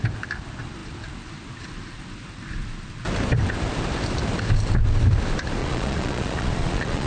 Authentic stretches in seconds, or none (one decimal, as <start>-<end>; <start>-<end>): 0.0-5.6